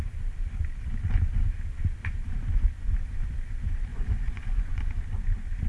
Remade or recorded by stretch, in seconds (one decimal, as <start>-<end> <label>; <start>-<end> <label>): 0.0-3.9 recorded; 3.9-4.8 remade; 4.8-5.7 recorded